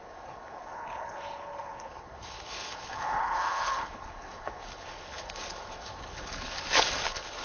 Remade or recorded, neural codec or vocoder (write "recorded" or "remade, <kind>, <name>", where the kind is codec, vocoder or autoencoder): remade, codec, HILCodec